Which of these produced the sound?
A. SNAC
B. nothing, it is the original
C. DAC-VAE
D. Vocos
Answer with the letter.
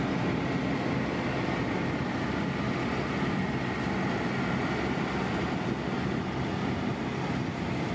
B